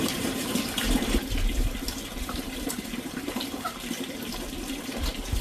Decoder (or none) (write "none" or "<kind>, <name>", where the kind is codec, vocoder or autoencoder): vocoder, BigVGAN v2